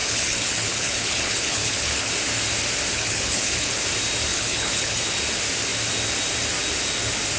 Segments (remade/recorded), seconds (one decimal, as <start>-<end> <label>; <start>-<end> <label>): 0.0-2.1 remade; 2.1-2.9 recorded; 2.9-3.8 remade; 3.8-4.3 recorded; 4.3-5.0 remade; 5.0-7.4 recorded